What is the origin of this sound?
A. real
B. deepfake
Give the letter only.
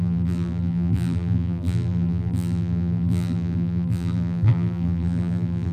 B